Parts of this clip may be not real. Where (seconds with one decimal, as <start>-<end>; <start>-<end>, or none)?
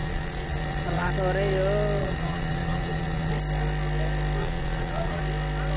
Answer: 0.0-1.1; 2.0-3.3; 4.4-5.2